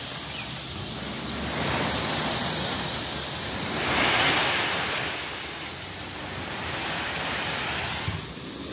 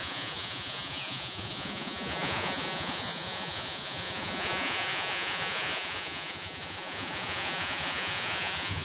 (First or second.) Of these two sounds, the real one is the first